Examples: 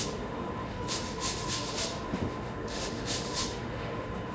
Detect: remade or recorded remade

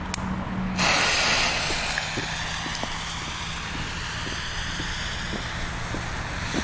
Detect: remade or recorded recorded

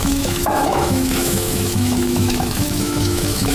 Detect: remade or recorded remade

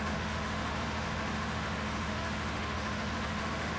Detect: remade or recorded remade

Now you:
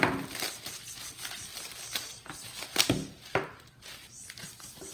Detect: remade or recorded recorded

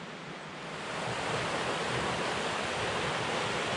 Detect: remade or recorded recorded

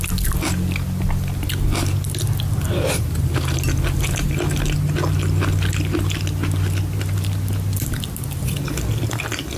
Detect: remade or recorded recorded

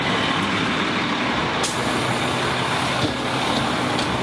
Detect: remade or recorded recorded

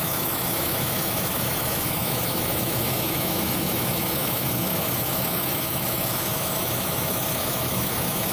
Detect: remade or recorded remade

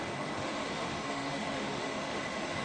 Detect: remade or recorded remade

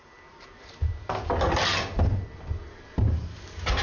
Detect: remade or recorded recorded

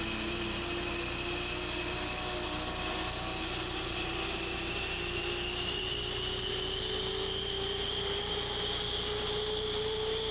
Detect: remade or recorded recorded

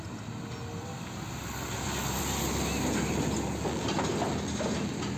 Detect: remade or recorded recorded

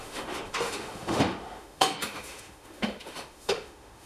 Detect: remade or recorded remade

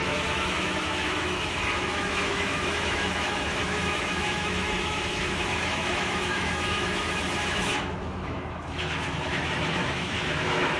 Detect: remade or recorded remade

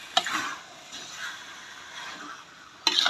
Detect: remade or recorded recorded